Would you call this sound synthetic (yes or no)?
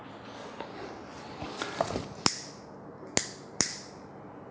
no